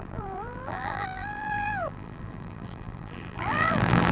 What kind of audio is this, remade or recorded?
remade